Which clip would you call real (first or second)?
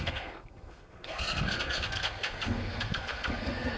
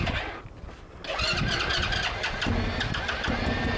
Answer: second